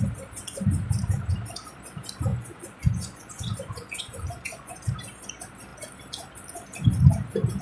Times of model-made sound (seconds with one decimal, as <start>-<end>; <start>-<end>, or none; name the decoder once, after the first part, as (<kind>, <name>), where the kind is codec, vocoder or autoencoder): 2.3-4.8 (vocoder, Vocos)